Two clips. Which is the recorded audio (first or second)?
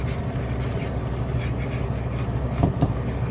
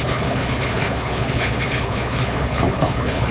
first